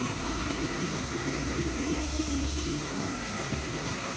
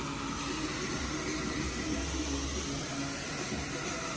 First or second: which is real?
second